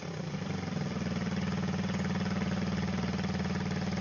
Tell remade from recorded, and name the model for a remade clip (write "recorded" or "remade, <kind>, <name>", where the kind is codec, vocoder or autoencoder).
recorded